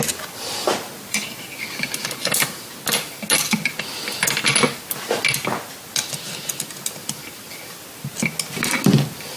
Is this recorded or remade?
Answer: recorded